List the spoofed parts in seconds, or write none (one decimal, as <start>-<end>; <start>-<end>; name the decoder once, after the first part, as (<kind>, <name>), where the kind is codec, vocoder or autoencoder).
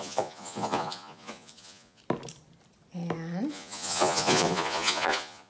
0.0-2.0 (vocoder, Vocos); 3.5-5.5